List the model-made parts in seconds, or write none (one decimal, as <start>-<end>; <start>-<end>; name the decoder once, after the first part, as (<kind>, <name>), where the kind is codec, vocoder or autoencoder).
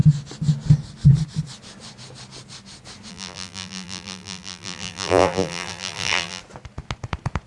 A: 3.1-6.4 (vocoder, BigVGAN v2)